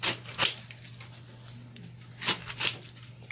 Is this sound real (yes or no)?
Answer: yes